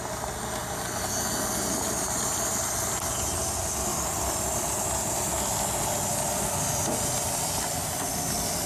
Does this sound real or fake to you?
real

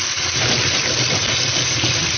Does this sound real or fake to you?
real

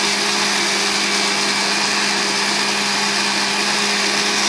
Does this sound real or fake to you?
real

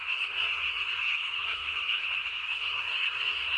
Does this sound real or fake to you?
fake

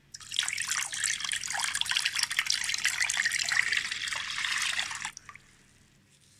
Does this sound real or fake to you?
real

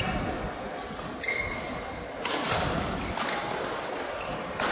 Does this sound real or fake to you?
real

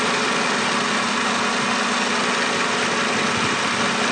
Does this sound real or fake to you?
real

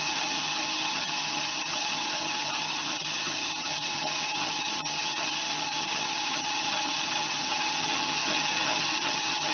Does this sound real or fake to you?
fake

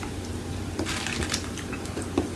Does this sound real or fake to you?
real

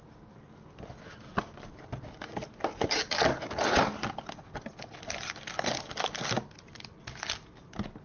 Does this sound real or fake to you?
real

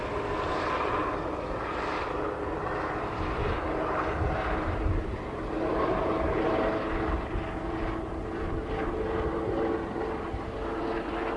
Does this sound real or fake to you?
real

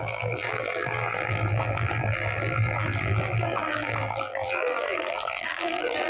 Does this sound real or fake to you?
fake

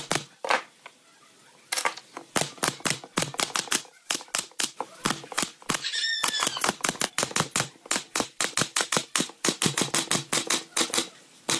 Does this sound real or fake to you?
real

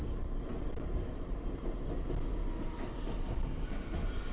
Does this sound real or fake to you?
real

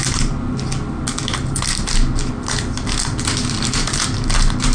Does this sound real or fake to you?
real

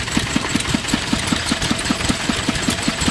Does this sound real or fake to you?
real